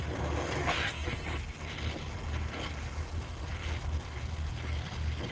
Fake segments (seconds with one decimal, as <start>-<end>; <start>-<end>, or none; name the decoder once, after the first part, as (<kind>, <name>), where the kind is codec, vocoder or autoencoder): 0.6-1.2 (codec, SNAC)